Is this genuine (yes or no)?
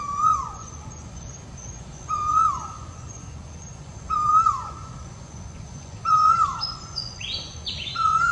no